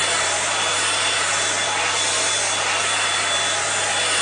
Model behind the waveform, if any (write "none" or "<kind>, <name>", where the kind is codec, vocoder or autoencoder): none